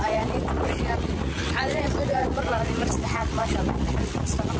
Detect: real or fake fake